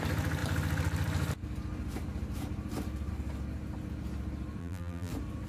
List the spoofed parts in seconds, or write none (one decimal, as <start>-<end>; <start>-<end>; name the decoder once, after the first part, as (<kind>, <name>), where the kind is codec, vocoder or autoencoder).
4.6-5.1 (vocoder, BigVGAN v2)